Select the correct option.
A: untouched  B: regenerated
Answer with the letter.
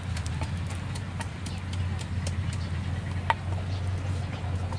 A